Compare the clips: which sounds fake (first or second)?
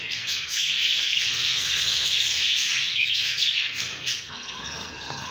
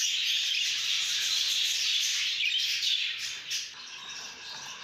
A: first